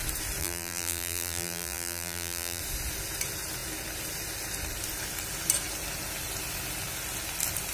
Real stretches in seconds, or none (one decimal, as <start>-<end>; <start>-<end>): 0.0-0.4; 2.6-7.7